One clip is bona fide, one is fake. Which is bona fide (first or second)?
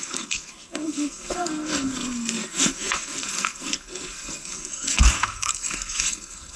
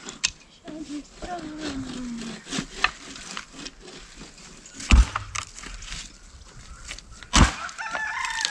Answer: second